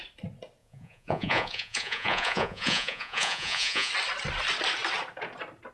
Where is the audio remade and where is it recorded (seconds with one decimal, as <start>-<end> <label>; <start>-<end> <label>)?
0.0-0.6 recorded; 0.6-3.9 remade; 3.9-5.7 recorded